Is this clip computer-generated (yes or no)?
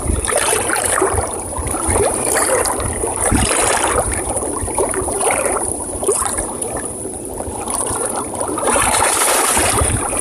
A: yes